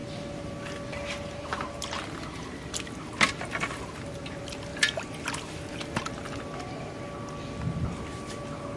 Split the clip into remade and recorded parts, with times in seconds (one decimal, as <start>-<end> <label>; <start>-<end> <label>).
0.0-8.8 recorded